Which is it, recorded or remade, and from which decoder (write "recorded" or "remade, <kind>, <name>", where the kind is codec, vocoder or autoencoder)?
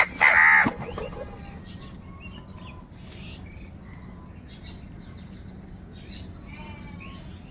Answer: recorded